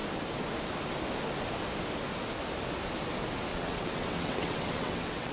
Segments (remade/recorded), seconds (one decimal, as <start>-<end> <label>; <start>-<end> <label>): 0.0-3.5 recorded; 3.5-5.3 remade